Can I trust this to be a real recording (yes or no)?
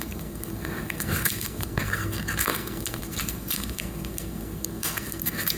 no